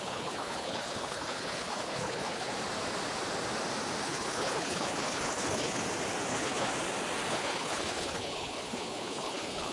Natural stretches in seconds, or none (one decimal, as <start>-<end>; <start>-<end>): 2.5-4.0; 5.8-6.3; 6.7-7.3

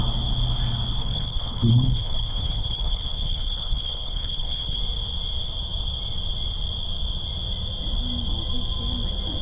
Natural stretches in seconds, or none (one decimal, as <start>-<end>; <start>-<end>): 0.0-1.0; 4.8-9.4

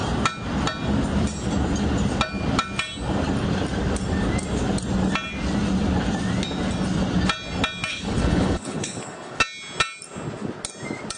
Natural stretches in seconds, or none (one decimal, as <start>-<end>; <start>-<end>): 0.0-7.9; 9.4-11.2

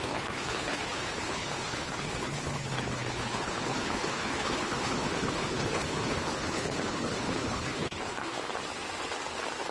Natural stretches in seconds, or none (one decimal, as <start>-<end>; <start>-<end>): 8.4-9.7

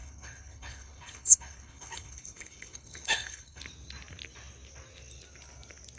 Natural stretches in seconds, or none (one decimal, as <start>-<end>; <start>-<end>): 3.6-6.0

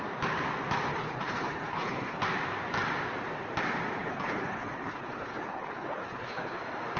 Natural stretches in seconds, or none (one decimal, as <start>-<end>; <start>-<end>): 0.0-0.9; 2.2-4.0; 6.6-7.0

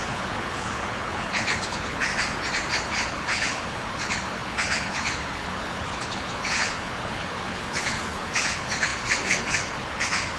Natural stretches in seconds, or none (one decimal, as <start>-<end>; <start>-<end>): 2.1-2.7

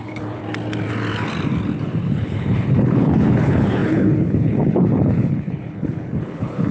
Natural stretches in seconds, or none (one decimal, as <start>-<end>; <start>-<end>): 0.4-1.8